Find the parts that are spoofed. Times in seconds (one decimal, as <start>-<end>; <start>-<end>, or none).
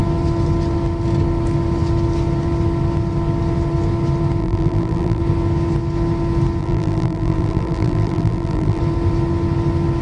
4.4-5.2; 6.6-8.8